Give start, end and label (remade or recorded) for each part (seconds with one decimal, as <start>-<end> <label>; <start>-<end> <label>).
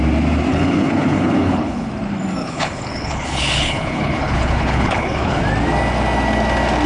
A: 0.0-0.5 recorded; 0.5-1.9 remade; 1.9-2.4 recorded; 2.4-5.4 remade; 5.4-6.9 recorded